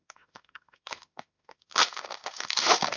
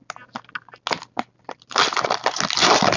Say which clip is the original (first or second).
second